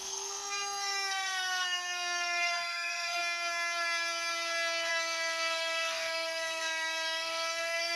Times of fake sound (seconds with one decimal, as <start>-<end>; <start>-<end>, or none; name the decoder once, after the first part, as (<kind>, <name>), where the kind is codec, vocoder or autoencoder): 0.0-3.2 (codec, SNAC); 4.9-8.0